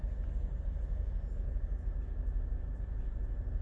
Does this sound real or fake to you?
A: real